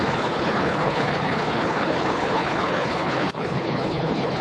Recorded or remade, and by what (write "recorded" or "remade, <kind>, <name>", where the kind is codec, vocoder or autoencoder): remade, codec, HILCodec